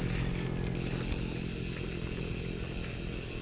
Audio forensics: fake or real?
real